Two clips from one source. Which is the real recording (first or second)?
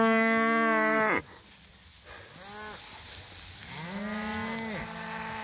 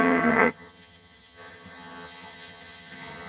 first